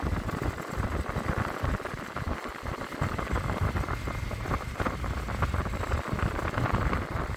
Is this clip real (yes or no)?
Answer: yes